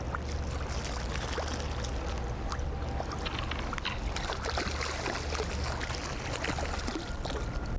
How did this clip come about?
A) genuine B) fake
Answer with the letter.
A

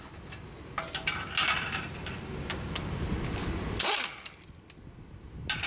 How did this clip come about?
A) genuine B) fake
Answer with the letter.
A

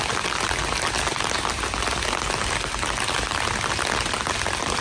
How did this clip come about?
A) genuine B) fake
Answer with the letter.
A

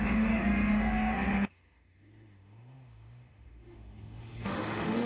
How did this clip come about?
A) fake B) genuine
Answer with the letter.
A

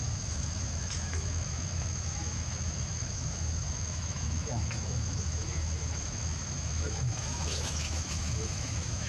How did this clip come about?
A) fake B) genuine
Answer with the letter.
A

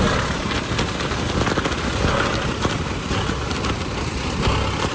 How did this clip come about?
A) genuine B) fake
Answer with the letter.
A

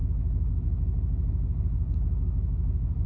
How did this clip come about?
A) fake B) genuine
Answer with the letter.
A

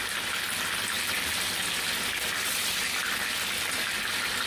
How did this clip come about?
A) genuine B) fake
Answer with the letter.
A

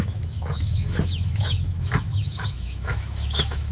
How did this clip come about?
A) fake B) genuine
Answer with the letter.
A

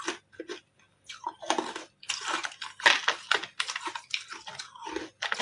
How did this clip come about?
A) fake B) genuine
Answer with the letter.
B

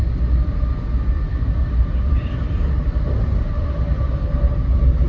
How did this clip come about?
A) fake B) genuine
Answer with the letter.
B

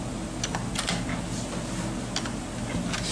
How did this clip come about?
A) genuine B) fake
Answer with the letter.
A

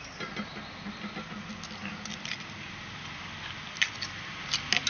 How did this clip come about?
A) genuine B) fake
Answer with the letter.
A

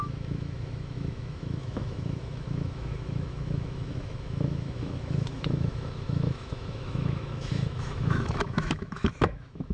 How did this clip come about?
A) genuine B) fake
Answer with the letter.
B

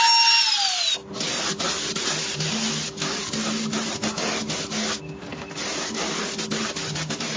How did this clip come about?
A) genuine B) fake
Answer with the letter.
A